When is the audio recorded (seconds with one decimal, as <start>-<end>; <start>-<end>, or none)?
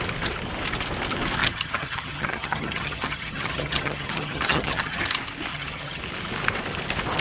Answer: 0.0-1.4; 5.0-5.5; 6.0-7.2